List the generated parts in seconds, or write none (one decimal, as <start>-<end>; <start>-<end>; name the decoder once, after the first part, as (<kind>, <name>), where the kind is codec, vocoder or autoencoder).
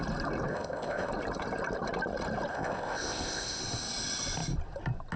0.5-1.1 (codec, ZipCodec); 2.5-3.6